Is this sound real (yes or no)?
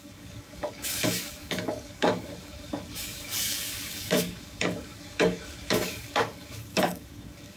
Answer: no